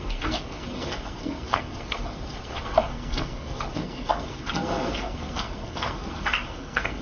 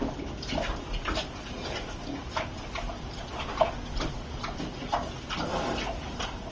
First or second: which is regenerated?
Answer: first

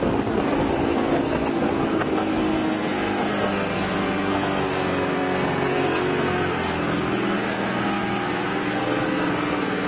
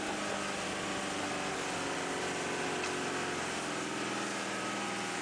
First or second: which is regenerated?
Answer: first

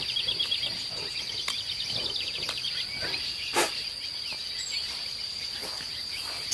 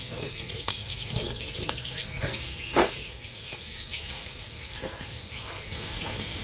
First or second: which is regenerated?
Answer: second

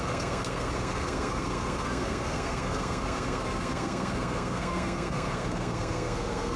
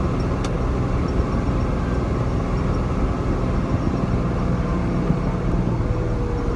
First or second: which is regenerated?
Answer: first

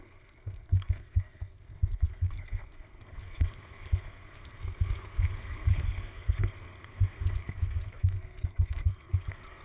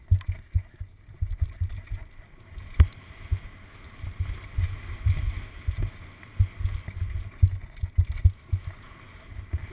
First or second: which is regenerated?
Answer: first